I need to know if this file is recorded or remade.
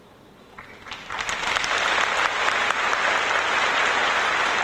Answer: recorded